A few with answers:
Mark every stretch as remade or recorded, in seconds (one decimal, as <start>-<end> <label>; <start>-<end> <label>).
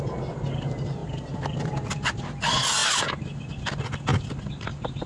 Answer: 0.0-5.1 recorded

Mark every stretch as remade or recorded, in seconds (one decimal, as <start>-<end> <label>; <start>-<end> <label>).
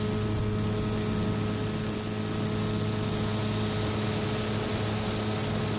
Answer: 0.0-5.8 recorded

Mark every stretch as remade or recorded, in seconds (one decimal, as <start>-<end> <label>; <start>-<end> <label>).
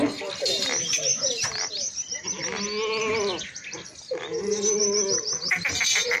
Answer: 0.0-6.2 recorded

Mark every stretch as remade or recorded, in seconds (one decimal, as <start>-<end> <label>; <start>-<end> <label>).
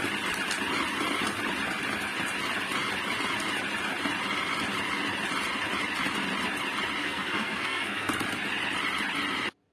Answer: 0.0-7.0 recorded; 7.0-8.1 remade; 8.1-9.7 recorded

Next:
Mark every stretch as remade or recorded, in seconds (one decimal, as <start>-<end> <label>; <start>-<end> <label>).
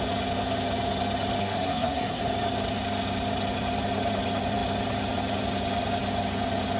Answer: 0.0-1.4 recorded; 1.4-2.2 remade; 2.2-6.8 recorded